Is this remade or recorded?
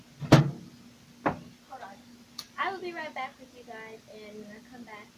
recorded